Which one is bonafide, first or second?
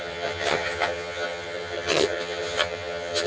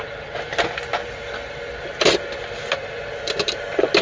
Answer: second